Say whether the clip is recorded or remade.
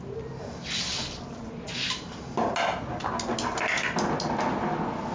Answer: recorded